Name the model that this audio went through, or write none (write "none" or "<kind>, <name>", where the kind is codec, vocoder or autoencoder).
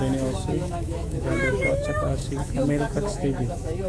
autoencoder, DAC-VAE